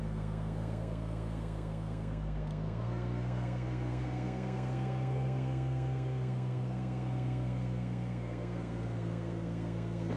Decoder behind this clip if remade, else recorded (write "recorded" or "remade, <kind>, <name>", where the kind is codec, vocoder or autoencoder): remade, codec, SNAC